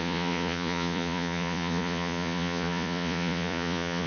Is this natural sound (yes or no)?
no